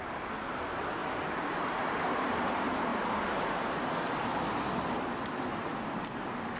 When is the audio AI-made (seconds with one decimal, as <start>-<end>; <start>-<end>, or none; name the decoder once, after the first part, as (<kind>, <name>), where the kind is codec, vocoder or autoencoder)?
none

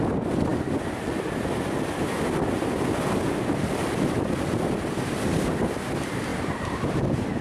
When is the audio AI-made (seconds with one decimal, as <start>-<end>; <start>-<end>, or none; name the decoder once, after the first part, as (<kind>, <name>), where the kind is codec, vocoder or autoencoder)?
6.3-7.0 (vocoder, BigVGAN v2)

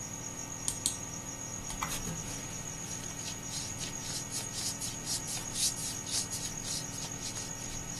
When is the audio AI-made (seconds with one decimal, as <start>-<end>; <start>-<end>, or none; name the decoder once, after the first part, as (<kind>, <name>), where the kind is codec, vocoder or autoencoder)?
none

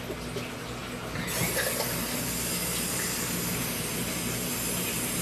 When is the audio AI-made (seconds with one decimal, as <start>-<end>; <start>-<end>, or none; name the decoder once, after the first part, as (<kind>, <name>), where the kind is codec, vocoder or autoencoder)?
none

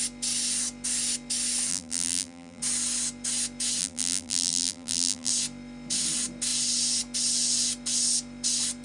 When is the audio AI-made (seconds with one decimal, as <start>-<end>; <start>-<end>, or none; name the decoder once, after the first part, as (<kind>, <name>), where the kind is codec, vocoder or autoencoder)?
1.7-2.6 (vocoder, BigVGAN v2); 3.8-5.3

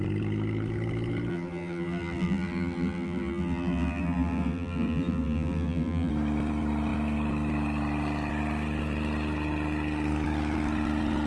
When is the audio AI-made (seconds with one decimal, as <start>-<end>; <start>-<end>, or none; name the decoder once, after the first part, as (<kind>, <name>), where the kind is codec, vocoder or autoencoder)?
1.3-6.1 (vocoder, BigVGAN v2)

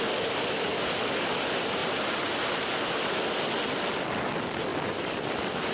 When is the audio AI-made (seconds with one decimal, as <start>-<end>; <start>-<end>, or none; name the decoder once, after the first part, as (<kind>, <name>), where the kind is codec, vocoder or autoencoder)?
none